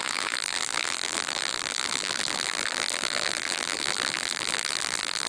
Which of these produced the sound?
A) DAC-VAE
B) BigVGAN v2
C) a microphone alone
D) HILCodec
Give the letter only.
B